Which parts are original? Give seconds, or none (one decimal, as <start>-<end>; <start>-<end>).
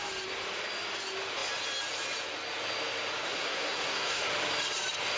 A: 0.0-3.2; 4.3-5.2